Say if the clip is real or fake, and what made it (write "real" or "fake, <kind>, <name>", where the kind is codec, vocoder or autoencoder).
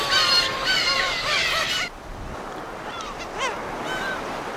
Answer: fake, vocoder, BigVGAN v2